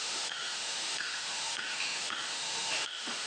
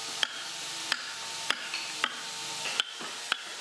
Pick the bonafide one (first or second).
second